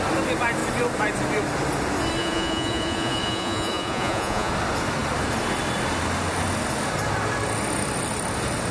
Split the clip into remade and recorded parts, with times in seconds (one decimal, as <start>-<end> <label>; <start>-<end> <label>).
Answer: 0.0-2.2 recorded; 2.2-4.5 remade; 4.5-8.7 recorded